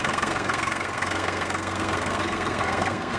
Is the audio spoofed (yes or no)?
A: yes